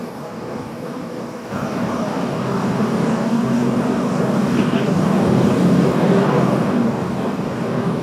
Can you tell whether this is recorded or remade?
remade